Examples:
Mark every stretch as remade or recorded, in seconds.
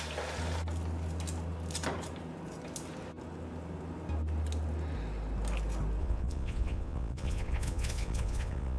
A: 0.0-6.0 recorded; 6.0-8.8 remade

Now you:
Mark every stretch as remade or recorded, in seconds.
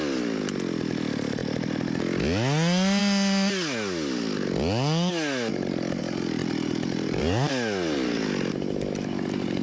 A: 0.0-5.5 recorded; 5.5-6.0 remade; 6.0-6.4 recorded; 6.4-7.5 remade; 7.5-9.6 recorded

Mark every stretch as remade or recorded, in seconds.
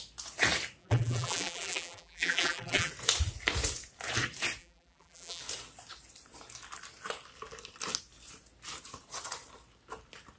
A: 0.0-0.8 recorded; 0.8-2.9 remade; 2.9-4.6 recorded; 4.6-5.4 remade; 5.4-10.4 recorded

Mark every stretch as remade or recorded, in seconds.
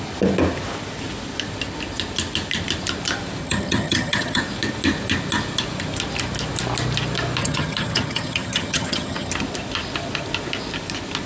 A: 0.0-3.4 recorded; 3.4-4.4 remade; 4.4-7.4 recorded; 7.4-9.3 remade; 9.3-11.3 recorded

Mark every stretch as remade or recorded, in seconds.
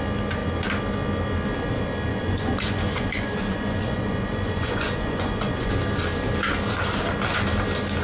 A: 0.0-2.1 recorded; 2.1-5.7 remade; 5.7-8.0 recorded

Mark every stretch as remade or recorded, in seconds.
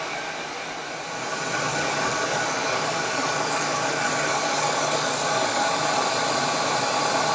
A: 0.0-1.7 recorded; 1.7-5.8 remade; 5.8-7.3 recorded